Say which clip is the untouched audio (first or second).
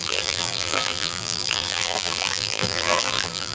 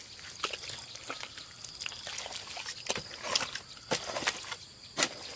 second